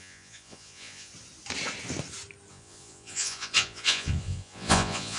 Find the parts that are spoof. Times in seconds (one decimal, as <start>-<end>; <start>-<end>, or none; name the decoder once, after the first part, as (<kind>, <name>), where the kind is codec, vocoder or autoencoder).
0.0-1.1 (vocoder, Vocos); 2.5-5.2